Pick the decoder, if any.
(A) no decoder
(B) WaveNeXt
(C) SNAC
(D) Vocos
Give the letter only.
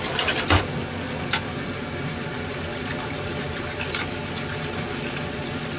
A